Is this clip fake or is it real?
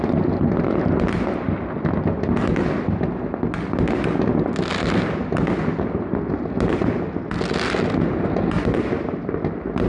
real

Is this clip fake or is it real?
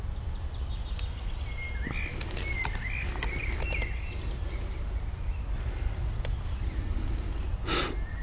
real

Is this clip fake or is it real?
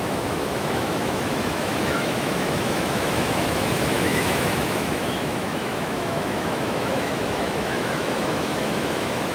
fake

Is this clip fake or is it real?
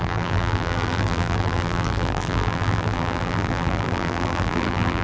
fake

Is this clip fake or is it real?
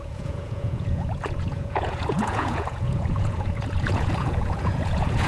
fake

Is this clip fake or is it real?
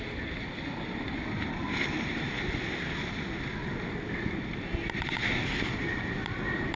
real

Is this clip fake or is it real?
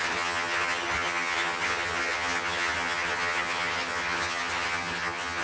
fake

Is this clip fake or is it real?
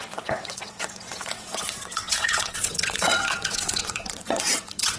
fake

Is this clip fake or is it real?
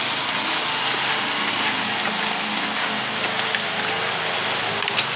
real